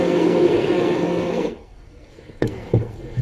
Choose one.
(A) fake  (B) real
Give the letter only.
A